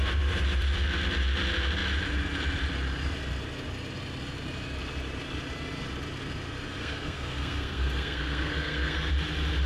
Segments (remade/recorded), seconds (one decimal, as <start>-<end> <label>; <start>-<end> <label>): 0.0-6.8 recorded; 6.8-9.1 remade; 9.1-9.7 recorded